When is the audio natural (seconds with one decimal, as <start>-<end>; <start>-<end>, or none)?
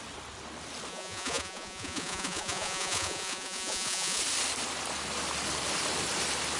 0.0-0.9; 4.2-6.6